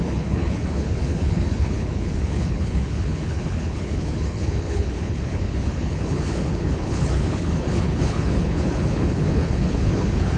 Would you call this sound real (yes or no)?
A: no